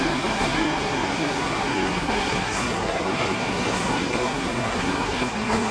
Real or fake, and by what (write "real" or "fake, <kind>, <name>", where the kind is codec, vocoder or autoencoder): fake, codec, SNAC